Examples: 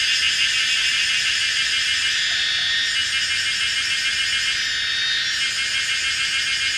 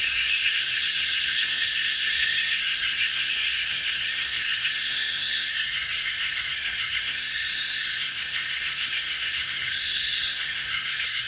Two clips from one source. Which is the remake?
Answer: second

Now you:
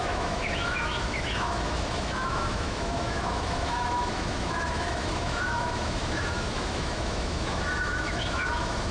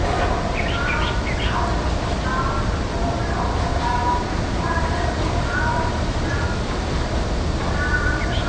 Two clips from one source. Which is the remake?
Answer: first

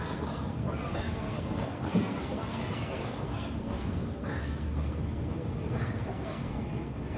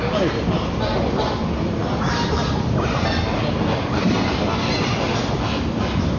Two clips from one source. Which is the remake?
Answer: first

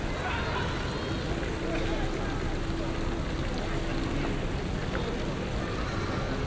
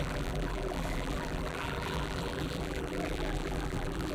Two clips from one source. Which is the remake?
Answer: second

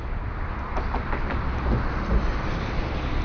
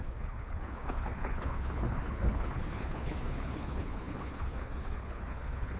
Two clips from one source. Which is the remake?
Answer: second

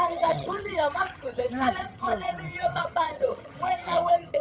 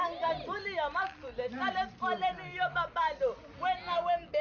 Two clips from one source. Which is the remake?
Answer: first